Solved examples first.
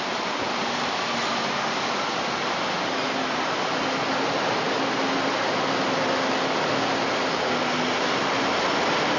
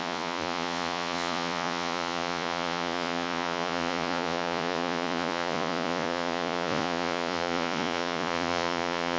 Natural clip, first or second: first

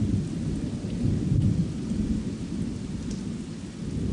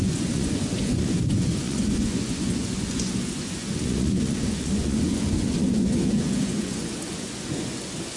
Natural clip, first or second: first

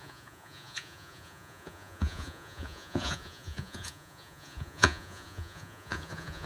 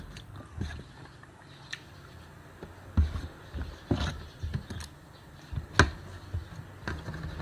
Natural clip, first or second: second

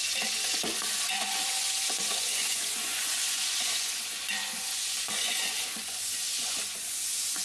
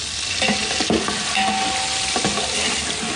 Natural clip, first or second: second